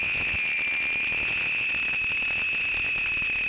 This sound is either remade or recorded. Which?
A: recorded